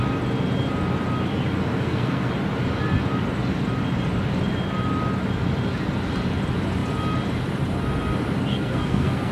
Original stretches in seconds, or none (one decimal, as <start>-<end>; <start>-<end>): 0.0-1.7; 2.3-8.5